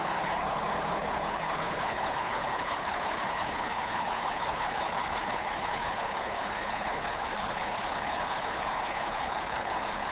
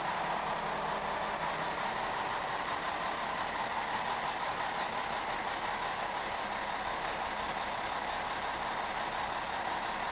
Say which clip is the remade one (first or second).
first